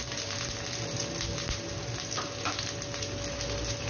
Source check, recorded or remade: recorded